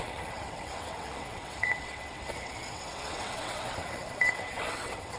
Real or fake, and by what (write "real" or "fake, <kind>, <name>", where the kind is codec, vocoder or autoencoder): fake, vocoder, WaveNeXt